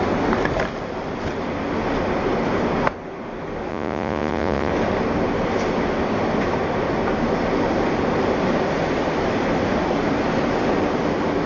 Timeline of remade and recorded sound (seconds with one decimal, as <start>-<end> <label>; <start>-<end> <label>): 0.0-3.7 recorded; 3.7-4.7 remade; 4.7-11.5 recorded